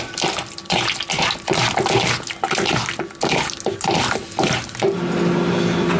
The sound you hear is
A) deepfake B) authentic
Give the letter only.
B